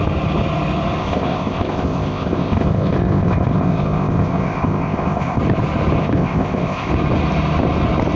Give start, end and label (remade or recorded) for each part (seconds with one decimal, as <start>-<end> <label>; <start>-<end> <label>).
0.0-1.0 recorded; 1.0-5.4 remade; 5.4-6.0 recorded; 6.0-6.9 remade; 6.9-8.2 recorded